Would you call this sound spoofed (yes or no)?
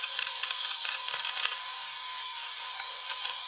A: yes